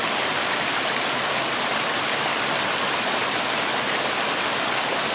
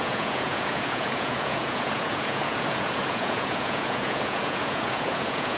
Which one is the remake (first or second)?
second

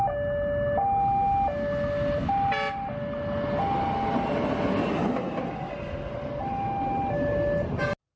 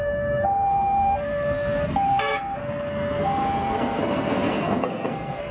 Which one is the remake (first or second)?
second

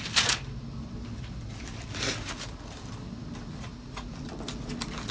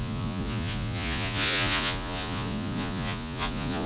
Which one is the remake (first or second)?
second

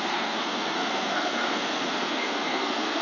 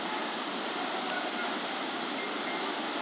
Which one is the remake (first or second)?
first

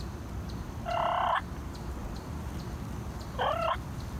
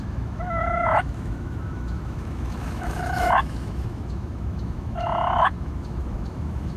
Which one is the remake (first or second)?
second